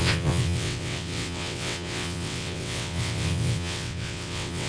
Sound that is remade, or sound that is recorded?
remade